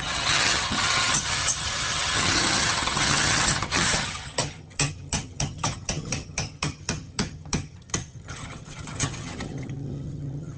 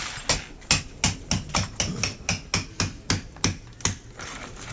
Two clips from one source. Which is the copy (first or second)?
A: first